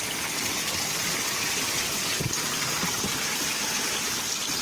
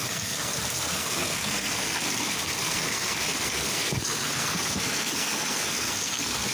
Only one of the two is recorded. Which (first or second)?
first